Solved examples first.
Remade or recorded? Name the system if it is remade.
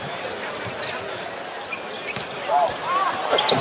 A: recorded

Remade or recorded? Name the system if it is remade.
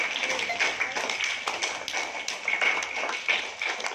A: recorded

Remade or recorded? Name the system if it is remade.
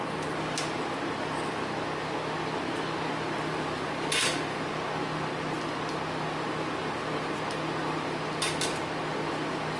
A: recorded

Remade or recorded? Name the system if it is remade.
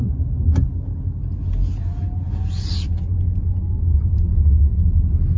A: recorded